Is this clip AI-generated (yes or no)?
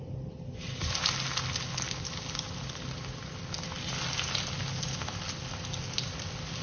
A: no